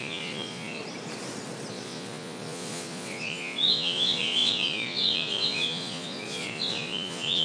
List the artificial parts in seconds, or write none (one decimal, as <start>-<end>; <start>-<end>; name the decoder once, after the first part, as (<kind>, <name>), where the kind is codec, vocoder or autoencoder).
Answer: 0.0-0.8 (vocoder, Vocos); 1.7-7.4